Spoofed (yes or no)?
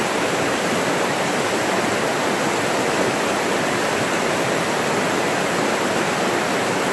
no